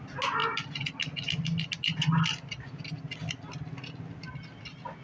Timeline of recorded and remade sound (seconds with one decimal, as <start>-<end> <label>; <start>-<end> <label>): 0.0-5.0 recorded